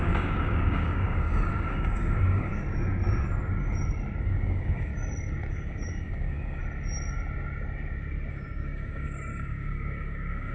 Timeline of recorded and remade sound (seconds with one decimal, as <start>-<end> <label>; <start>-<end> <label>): 0.0-2.5 remade; 2.5-4.2 recorded; 4.2-4.9 remade; 4.9-5.5 recorded; 5.5-6.6 remade; 6.6-8.3 recorded; 8.3-10.5 remade